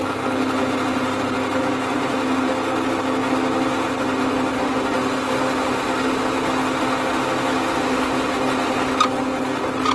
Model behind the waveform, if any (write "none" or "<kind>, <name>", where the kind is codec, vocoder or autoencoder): none